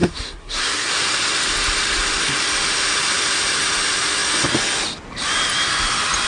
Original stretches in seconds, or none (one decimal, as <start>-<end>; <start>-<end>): 0.9-6.3